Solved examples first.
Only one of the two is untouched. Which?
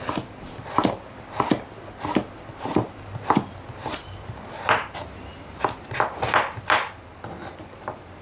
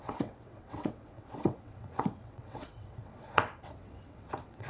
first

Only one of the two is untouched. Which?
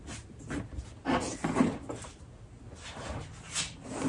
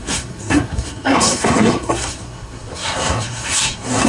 first